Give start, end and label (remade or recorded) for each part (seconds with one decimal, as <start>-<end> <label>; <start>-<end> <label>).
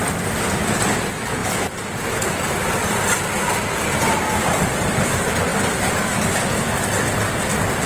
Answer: 0.0-1.4 recorded; 1.4-4.2 remade; 4.2-7.9 recorded